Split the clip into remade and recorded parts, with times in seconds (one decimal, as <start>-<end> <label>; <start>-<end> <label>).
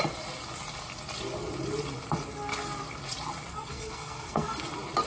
0.0-3.5 recorded; 3.5-4.6 remade; 4.6-5.1 recorded